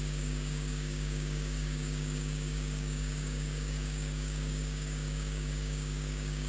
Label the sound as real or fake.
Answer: fake